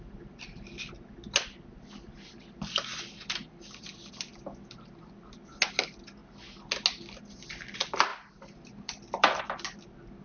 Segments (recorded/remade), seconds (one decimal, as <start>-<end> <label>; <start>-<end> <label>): 0.0-2.9 recorded; 2.9-4.1 remade; 4.1-8.1 recorded; 8.1-9.4 remade; 9.4-10.2 recorded